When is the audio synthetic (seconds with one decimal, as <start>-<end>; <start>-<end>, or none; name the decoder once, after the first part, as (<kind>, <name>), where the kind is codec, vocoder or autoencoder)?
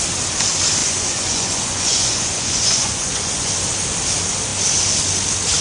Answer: 0.8-3.5 (vocoder, Vocos)